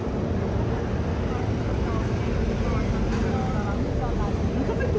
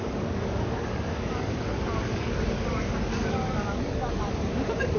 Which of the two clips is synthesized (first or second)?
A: second